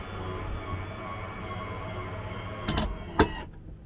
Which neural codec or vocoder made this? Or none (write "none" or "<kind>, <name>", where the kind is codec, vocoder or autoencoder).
none